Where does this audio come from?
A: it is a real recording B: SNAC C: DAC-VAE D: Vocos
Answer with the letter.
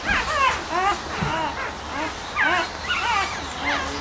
A